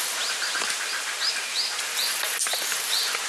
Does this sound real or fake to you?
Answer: fake